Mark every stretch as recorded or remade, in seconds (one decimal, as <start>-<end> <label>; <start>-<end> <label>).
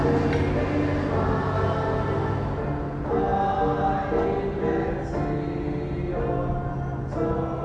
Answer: 0.0-7.6 recorded